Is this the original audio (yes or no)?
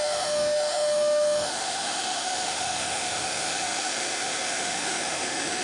no